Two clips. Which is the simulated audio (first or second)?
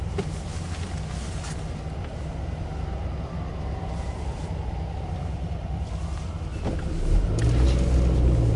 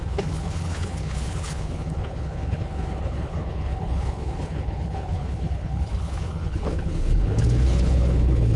second